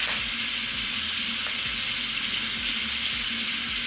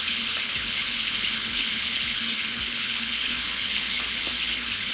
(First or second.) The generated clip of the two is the second